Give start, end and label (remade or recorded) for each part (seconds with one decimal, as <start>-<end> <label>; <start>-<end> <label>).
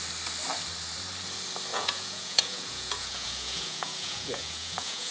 0.0-1.7 recorded; 1.7-5.1 remade